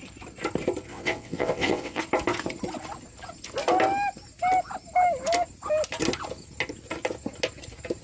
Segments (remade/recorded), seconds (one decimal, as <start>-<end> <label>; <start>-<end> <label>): 0.0-0.9 recorded; 0.9-2.0 remade; 2.0-8.0 recorded